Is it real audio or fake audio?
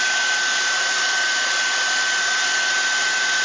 real